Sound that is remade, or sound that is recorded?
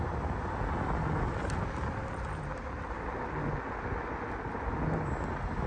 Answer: recorded